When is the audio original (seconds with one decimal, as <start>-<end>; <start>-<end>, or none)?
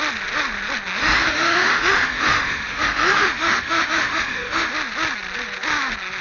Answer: 0.0-1.0; 4.7-6.2